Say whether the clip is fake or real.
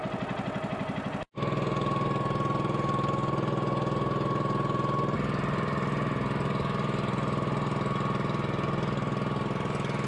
real